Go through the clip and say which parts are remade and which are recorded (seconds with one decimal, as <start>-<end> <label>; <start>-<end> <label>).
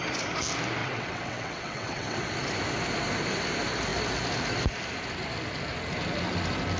0.0-0.8 recorded; 0.8-2.3 remade; 2.3-6.8 recorded